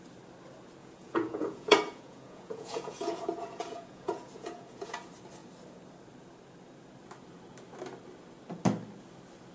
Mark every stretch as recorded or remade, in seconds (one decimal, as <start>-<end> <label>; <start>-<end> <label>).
0.0-0.8 recorded; 0.8-4.9 remade; 4.9-9.5 recorded